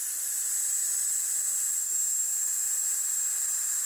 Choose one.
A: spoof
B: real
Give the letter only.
B